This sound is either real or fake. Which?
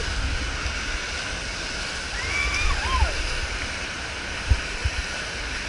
real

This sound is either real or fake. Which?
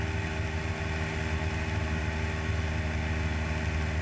real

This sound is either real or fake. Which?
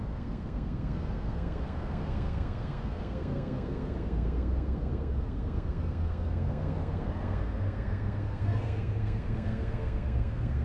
fake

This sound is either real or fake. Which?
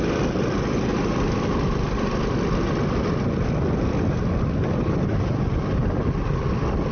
real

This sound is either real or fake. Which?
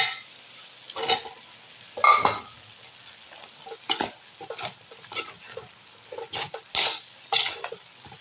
real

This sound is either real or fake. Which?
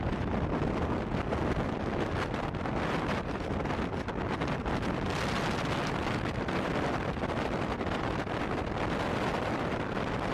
real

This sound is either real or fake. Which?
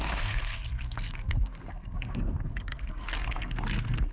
fake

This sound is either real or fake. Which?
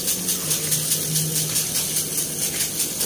real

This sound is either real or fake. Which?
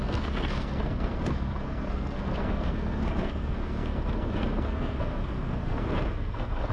fake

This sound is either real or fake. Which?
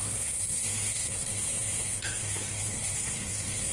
fake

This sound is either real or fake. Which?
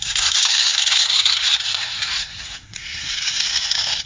fake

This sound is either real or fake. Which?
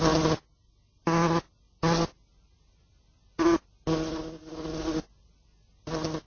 real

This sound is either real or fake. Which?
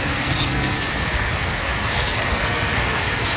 fake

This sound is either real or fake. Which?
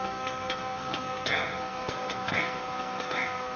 fake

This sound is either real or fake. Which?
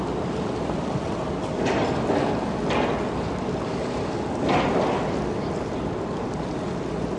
real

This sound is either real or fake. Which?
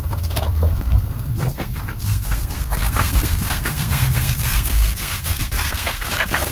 fake